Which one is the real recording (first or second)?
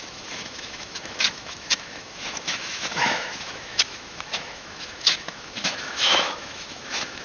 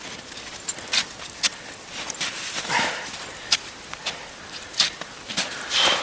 second